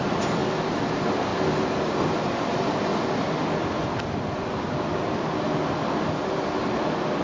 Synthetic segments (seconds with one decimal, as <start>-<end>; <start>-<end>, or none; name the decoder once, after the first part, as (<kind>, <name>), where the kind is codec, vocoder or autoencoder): 0.0-0.4 (vocoder, BigVGAN v2); 0.9-1.3; 2.1-2.9